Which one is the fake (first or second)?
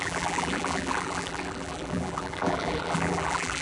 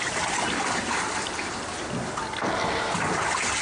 first